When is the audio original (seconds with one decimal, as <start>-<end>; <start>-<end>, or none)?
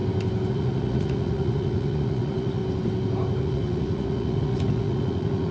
0.0-0.5; 2.6-3.4